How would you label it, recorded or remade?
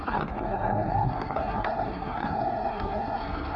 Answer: remade